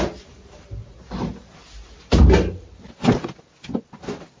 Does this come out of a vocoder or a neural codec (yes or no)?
no